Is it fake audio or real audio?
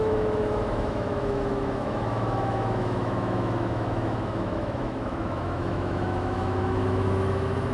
fake